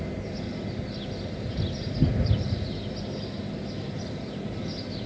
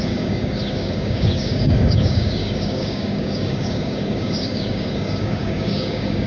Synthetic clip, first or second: second